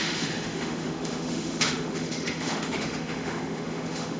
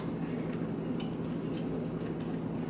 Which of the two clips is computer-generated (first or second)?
first